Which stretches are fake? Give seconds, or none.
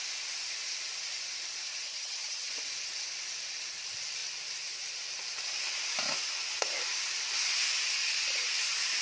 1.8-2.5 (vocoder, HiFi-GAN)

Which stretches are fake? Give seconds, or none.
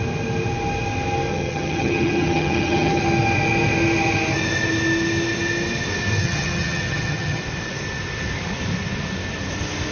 1.3-3.0 (vocoder, HiFi-GAN); 6.2-7.4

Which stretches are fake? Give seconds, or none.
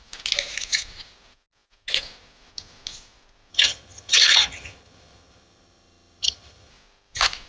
3.5-6.7 (vocoder, HiFi-GAN)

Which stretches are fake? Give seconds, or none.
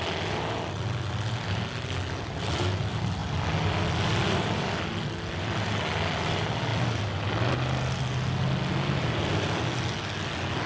none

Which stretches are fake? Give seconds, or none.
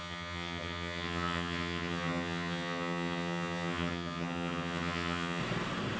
0.0-5.4 (vocoder, HiFi-GAN)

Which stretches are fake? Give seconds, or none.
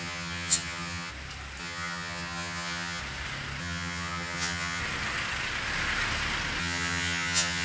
0.0-1.1 (vocoder, HiFi-GAN); 1.6-3.0; 3.6-4.8; 6.6-7.6